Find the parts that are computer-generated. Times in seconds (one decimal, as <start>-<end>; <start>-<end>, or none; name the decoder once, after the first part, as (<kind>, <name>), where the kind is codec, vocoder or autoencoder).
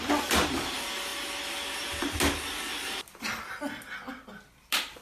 none